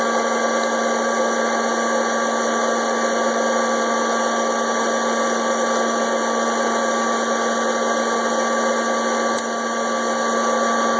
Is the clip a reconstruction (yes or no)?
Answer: no